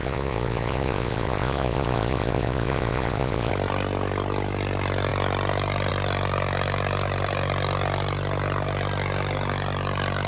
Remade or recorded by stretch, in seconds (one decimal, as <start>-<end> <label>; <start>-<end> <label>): 0.0-3.5 remade; 3.5-10.3 recorded